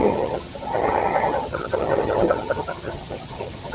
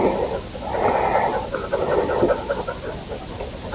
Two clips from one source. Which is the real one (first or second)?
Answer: second